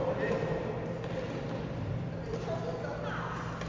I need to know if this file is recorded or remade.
recorded